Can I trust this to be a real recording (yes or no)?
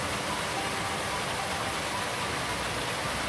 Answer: yes